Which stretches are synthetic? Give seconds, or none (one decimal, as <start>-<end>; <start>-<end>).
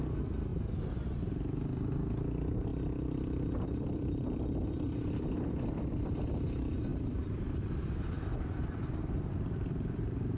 0.5-1.2; 2.7-6.3; 6.9-10.4